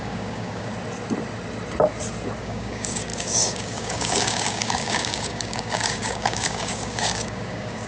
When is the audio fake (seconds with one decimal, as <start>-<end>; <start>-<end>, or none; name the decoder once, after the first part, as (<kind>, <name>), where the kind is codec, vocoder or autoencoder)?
0.0-0.7 (codec, DAC); 2.4-7.9